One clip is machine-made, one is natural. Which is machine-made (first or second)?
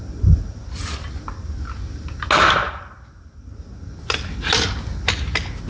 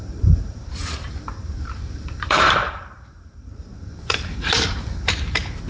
second